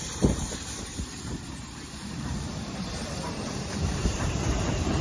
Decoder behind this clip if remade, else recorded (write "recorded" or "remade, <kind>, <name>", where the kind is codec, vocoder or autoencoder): remade, vocoder, BigVGAN v2